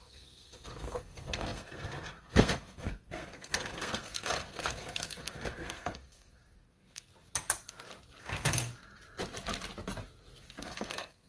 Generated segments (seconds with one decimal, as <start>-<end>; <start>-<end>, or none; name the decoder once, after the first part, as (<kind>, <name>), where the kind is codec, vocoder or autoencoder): 0.0-7.1 (codec, SNAC); 8.2-8.7; 10.6-11.3